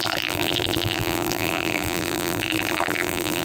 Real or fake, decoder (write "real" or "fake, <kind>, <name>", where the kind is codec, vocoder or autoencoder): fake, vocoder, BigVGAN v2